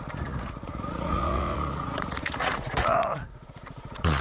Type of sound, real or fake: fake